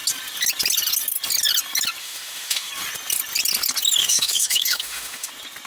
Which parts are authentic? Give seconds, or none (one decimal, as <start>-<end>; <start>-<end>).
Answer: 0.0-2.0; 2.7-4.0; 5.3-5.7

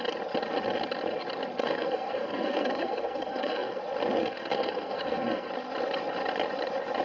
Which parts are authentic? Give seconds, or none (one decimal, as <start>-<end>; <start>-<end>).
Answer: 0.0-1.6; 3.8-4.2; 5.5-7.0

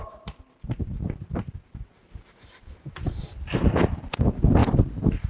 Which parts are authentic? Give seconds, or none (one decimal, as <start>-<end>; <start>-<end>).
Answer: 3.2-4.6

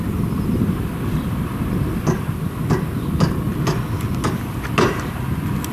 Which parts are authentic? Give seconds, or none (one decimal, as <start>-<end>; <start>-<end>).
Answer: 0.0-5.7

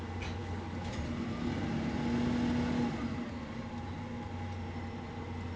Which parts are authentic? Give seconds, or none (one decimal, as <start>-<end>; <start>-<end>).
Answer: 0.0-5.6